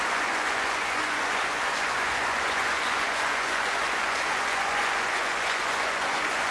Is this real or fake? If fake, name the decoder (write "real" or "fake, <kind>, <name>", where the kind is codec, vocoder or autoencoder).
fake, vocoder, Vocos